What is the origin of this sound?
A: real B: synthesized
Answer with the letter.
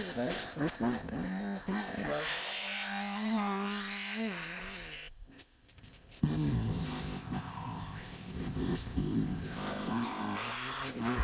B